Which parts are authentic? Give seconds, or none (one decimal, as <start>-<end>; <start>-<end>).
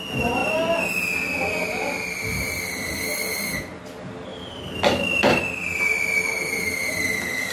0.0-4.3